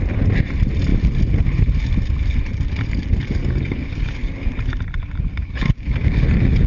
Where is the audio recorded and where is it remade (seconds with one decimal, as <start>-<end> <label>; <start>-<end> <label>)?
0.0-3.4 recorded; 3.4-4.5 remade; 4.5-5.3 recorded; 5.3-6.7 remade